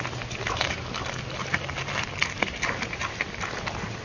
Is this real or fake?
real